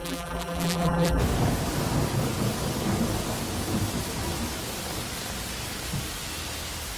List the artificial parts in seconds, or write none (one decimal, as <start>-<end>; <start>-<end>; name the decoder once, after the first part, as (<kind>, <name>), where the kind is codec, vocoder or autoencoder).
0.0-1.2 (vocoder, BigVGAN v2)